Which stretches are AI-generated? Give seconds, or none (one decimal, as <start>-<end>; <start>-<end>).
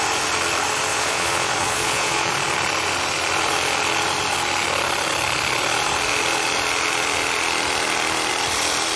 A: 0.9-2.3